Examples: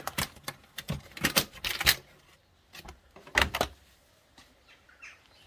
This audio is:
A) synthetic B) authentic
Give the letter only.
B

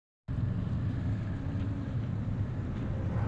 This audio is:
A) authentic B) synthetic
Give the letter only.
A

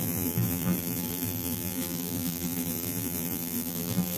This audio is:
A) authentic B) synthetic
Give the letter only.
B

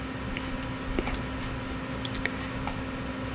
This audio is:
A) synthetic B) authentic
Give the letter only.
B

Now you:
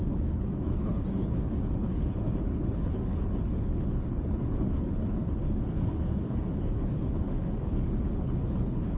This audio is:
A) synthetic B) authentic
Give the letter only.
A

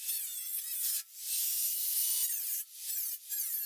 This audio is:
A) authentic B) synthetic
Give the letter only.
A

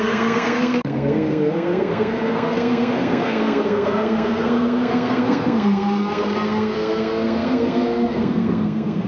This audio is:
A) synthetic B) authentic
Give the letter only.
A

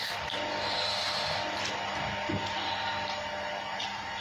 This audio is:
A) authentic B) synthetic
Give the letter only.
A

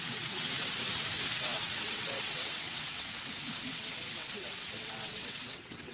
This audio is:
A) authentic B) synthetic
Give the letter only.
B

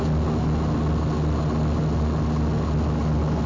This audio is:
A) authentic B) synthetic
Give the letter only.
A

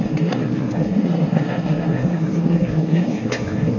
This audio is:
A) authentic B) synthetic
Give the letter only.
B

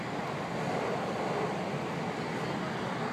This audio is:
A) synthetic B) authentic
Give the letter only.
B